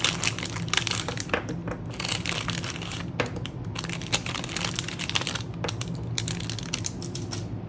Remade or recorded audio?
recorded